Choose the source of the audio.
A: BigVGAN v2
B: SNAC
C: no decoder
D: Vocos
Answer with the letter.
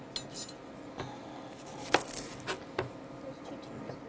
C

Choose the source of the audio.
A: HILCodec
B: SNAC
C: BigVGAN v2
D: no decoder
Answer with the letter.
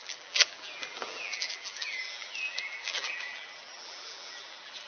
C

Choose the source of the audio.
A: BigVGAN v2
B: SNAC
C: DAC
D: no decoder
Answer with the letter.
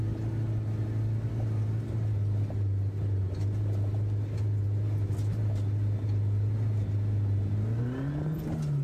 D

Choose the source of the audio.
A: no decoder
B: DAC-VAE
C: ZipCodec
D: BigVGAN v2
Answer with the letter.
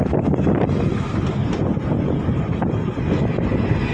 A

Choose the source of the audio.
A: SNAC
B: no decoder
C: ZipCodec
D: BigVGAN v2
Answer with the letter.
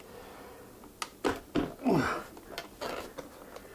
B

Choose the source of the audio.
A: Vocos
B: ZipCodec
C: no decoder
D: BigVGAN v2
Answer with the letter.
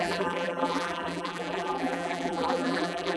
D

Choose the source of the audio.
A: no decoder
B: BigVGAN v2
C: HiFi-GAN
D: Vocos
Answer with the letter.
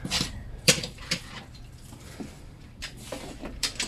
B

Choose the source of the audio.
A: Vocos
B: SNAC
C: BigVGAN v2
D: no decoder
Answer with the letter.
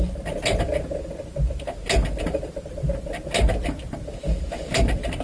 D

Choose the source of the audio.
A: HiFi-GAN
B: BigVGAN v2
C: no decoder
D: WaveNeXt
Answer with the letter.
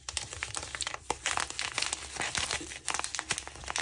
C